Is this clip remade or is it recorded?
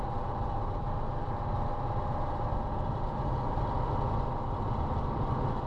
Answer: recorded